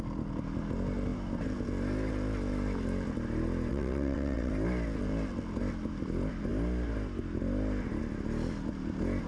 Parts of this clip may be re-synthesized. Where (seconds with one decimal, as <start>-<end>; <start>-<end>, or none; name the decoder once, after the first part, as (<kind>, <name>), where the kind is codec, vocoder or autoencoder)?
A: 3.7-4.5 (vocoder, WaveNeXt)